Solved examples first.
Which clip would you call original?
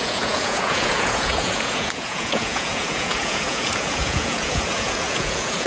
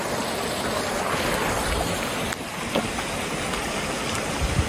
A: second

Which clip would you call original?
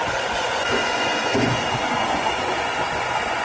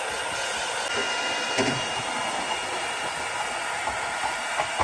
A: second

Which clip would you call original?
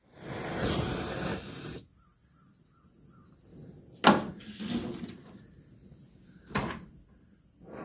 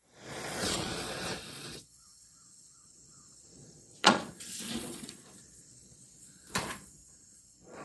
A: first